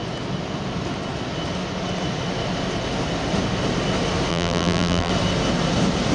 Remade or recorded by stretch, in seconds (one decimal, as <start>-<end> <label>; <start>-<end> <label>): 0.0-4.3 recorded; 4.3-5.1 remade; 5.1-6.1 recorded